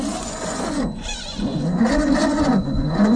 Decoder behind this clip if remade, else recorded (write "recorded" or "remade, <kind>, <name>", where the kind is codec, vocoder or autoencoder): remade, vocoder, Vocos